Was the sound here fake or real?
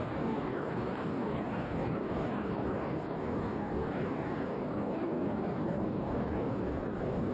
fake